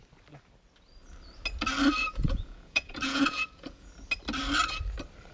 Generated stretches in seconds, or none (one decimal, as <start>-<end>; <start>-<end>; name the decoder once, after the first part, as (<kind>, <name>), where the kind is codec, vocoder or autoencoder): 2.0-3.9 (vocoder, Vocos)